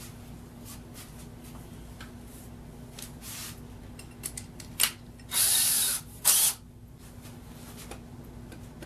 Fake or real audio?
real